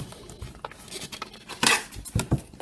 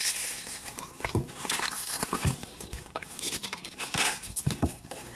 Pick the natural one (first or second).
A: first